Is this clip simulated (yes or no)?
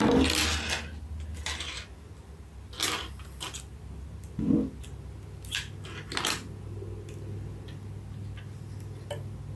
no